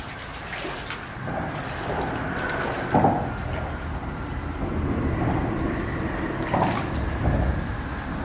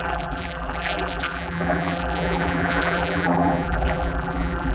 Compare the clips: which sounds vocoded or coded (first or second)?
second